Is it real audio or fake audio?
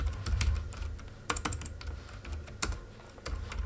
real